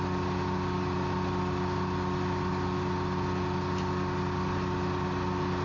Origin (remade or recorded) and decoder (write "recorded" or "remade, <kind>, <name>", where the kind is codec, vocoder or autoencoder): recorded